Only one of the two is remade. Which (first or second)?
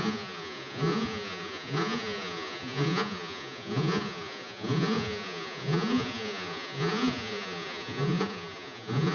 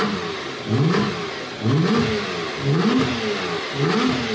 first